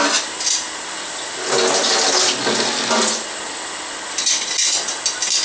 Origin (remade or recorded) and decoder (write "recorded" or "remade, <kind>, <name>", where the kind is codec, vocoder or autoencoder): recorded